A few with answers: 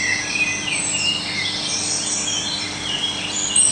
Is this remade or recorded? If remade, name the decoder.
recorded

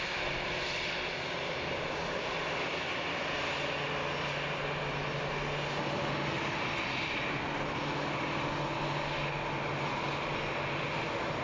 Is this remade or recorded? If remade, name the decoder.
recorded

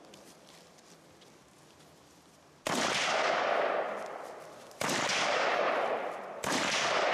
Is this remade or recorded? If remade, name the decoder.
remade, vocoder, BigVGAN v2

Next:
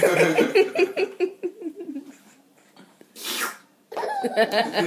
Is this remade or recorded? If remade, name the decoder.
remade, vocoder, BigVGAN v2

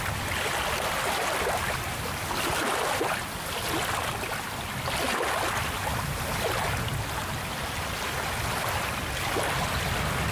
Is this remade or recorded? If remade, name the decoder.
recorded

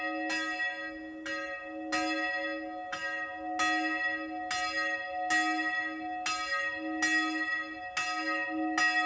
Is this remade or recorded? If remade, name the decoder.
recorded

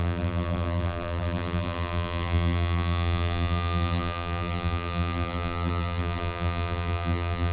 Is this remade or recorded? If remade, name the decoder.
remade, vocoder, BigVGAN v2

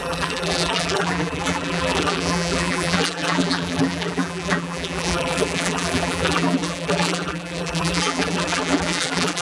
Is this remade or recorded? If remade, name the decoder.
remade, vocoder, BigVGAN v2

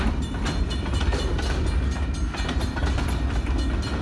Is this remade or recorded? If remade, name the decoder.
remade, vocoder, BigVGAN v2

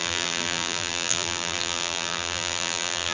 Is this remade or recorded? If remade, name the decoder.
remade, vocoder, BigVGAN v2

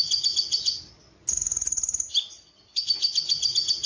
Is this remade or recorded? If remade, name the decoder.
recorded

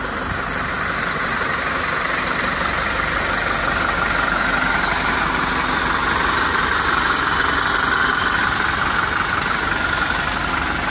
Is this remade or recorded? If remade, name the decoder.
recorded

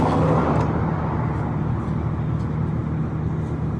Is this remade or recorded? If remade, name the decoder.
recorded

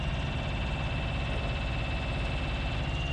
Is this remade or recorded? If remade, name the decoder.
recorded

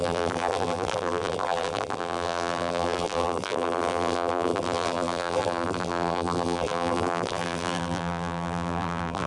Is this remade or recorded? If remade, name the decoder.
remade, vocoder, BigVGAN v2